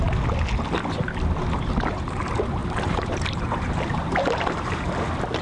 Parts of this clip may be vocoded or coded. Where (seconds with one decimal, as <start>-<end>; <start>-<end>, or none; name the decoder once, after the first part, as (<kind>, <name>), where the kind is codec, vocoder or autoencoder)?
1.4-2.2 (vocoder, BigVGAN v2); 2.6-4.9